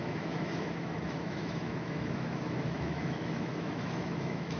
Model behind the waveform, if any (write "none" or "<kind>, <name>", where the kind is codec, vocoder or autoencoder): autoencoder, DAC-VAE